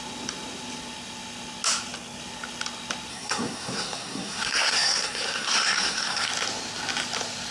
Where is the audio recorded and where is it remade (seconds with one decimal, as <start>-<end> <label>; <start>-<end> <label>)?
0.0-3.1 recorded; 3.1-6.3 remade; 6.3-7.5 recorded